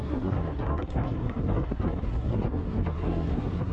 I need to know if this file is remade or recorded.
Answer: remade